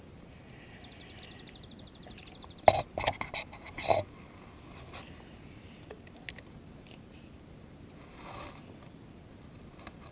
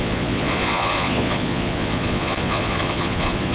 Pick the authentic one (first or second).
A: first